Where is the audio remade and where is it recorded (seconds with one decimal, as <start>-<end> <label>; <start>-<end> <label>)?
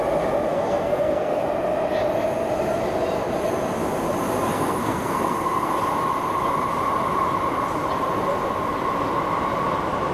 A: 0.0-0.5 recorded; 0.5-1.4 remade; 1.4-4.5 recorded; 4.5-5.7 remade; 5.7-10.1 recorded